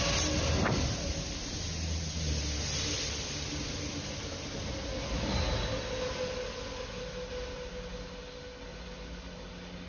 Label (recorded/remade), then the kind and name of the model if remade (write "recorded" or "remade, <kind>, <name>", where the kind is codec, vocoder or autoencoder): recorded